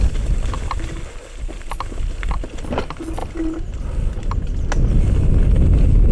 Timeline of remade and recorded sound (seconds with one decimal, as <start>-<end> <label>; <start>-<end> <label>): 0.0-6.1 recorded

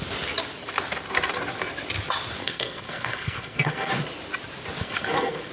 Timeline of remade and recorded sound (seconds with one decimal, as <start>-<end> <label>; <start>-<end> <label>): 0.0-2.4 recorded; 2.4-3.9 remade; 3.9-4.8 recorded; 4.8-5.5 remade